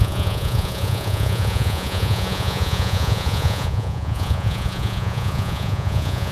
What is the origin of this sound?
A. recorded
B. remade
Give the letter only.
B